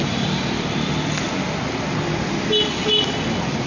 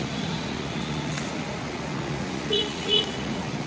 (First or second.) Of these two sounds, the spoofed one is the second